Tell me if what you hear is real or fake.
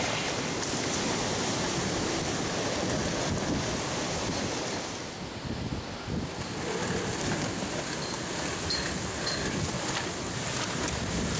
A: real